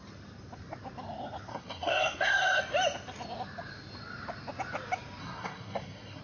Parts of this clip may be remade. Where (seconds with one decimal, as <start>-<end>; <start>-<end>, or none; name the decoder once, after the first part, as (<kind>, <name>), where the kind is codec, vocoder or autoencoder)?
1.5-2.6 (codec, SNAC); 5.2-6.2